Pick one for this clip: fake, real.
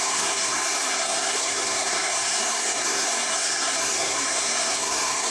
fake